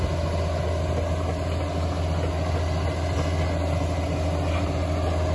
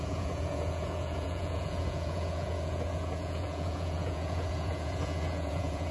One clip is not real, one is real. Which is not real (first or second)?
second